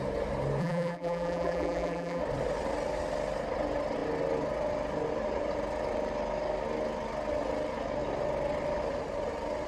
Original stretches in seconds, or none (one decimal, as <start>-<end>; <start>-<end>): 0.0-0.6; 2.2-9.7